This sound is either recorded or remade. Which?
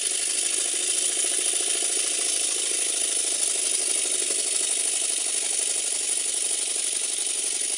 recorded